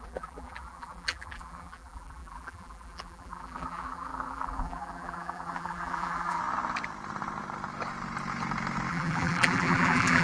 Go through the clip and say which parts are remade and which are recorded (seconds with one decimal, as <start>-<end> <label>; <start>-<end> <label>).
0.0-6.4 remade; 6.4-8.9 recorded; 8.9-10.2 remade